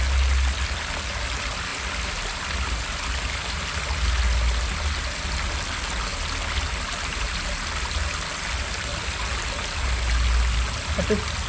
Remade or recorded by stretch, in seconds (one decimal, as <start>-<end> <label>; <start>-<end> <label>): 0.0-11.5 recorded